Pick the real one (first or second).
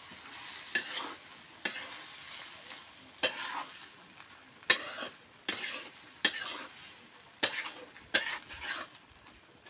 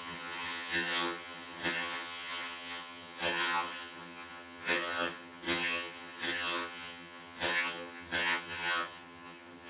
first